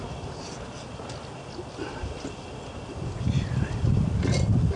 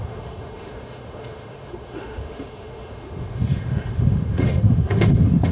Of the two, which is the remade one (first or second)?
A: second